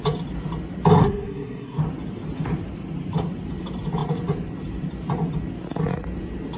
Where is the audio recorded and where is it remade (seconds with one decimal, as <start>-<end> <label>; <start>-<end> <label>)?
0.0-1.0 recorded; 1.0-1.8 remade; 1.8-6.6 recorded